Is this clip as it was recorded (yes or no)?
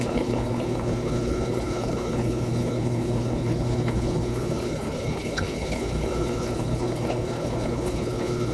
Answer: no